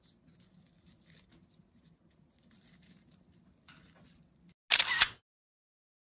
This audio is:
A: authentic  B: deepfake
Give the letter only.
A